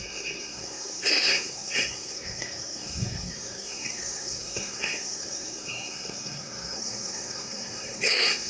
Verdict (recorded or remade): remade